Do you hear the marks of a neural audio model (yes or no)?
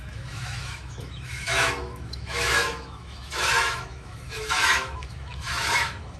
yes